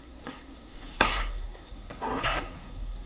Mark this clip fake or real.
fake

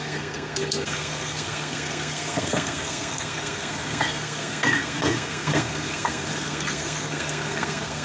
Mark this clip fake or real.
fake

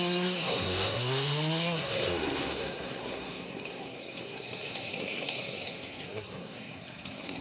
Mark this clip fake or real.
fake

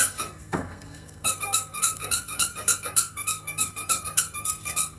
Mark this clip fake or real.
fake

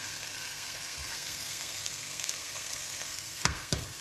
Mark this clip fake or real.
fake